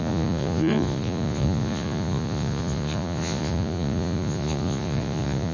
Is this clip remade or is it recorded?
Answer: remade